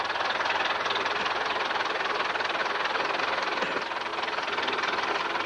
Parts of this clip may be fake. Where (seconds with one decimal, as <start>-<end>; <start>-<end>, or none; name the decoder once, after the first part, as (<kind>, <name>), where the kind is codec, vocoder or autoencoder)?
none